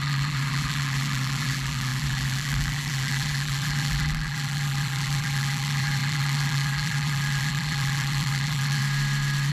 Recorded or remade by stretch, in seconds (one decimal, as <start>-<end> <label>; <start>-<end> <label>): 0.0-8.8 remade; 8.8-9.5 recorded